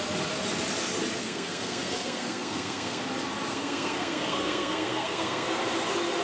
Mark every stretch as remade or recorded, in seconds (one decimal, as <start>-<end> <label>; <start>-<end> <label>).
0.0-1.2 recorded; 1.2-3.0 remade; 3.0-3.5 recorded; 3.5-5.6 remade; 5.6-6.2 recorded